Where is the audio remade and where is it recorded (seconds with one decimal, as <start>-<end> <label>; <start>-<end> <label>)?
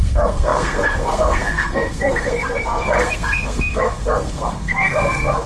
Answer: 0.0-5.5 remade